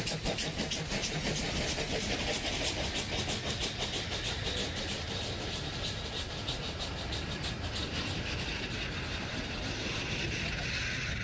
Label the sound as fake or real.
real